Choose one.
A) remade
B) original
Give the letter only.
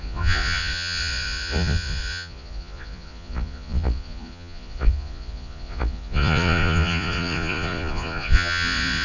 A